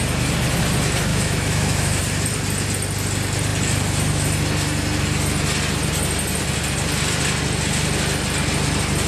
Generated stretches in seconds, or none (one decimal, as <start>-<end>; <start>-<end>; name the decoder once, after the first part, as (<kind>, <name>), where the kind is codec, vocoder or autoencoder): 1.1-2.0 (autoencoder, DAC-VAE)